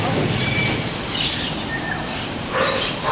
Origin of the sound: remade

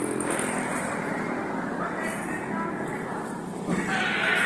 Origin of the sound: recorded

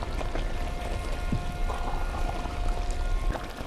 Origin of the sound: recorded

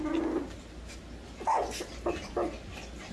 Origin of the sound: recorded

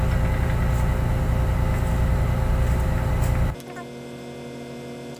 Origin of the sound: recorded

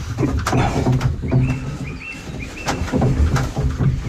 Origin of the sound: recorded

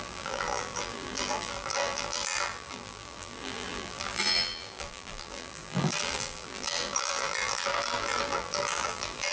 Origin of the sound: remade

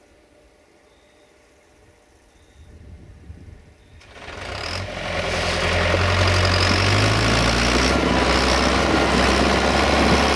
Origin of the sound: recorded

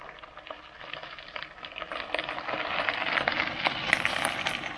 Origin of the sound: remade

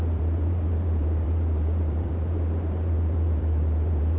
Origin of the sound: remade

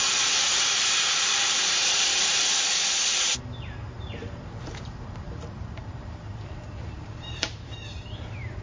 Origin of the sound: remade